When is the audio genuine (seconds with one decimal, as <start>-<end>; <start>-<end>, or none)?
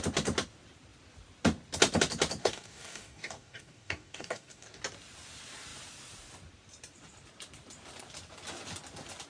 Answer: 0.0-2.4; 4.8-9.3